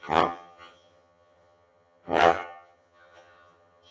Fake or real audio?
fake